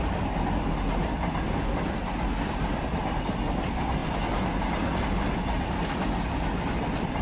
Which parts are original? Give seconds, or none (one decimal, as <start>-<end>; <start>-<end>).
0.0-7.2